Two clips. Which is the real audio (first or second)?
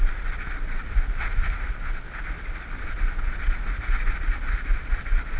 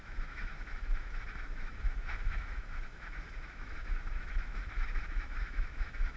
first